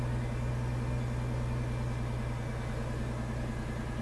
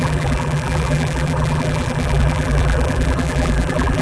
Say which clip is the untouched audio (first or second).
first